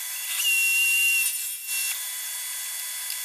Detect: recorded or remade recorded